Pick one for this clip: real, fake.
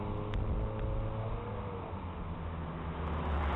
real